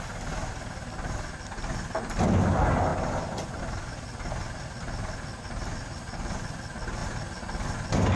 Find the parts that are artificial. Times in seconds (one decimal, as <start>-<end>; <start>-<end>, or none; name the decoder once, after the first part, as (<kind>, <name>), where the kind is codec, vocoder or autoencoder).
none